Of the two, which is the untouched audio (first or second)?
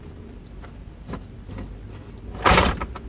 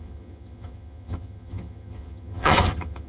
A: first